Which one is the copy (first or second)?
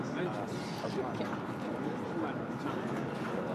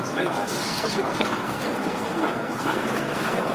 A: second